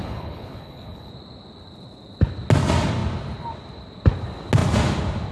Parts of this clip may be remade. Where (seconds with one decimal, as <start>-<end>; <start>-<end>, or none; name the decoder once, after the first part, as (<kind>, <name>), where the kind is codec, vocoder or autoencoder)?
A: 0.0-1.1 (codec, HILCodec)